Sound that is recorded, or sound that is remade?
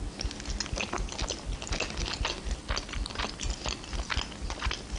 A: recorded